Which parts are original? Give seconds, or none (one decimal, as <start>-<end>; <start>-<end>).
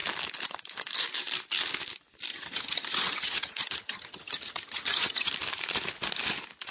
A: 0.0-2.3; 5.3-6.7